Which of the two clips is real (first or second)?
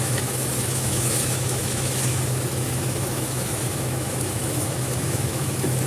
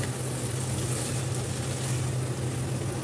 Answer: second